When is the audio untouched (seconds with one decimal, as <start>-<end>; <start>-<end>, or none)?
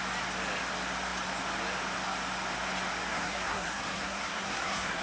0.0-3.1